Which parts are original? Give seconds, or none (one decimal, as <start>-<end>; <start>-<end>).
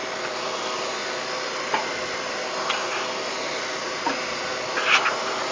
0.0-5.5